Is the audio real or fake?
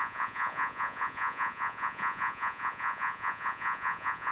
fake